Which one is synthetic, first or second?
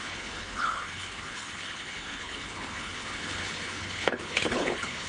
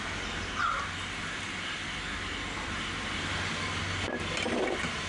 first